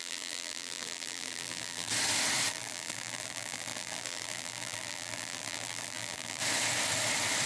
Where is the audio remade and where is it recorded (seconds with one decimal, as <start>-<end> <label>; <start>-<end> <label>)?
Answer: 0.0-1.9 remade; 1.9-2.5 recorded; 2.5-6.4 remade; 6.4-7.5 recorded